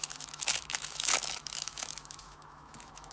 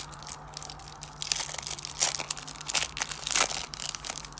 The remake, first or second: first